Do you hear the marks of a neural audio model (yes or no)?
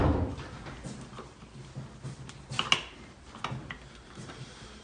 no